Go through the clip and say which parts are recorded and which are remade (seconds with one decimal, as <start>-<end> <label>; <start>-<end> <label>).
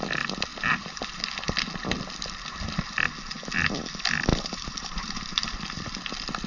0.0-0.5 recorded; 0.5-1.2 remade; 1.2-4.3 recorded; 4.3-5.5 remade; 5.5-6.5 recorded